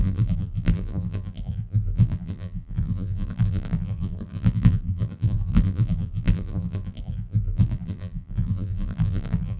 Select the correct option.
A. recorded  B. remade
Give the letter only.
B